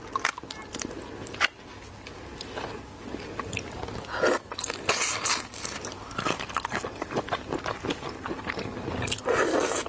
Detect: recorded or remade recorded